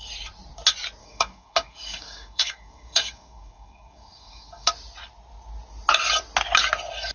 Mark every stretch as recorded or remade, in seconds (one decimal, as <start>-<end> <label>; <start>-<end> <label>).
0.0-1.0 recorded; 1.0-4.7 remade; 4.7-7.1 recorded